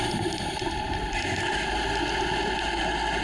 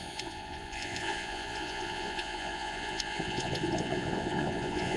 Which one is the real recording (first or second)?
first